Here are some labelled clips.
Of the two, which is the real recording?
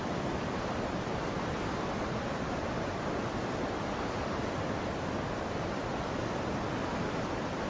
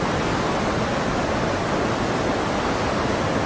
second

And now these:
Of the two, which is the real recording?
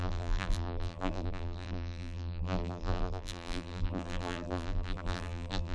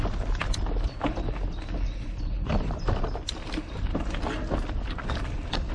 second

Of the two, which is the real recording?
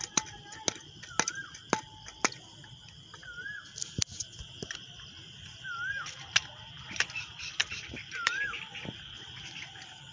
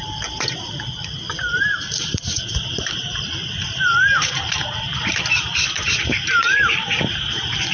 first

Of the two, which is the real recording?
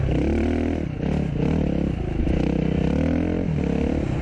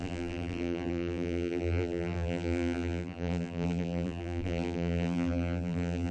first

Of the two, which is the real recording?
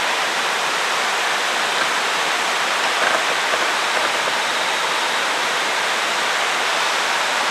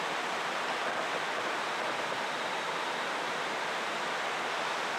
second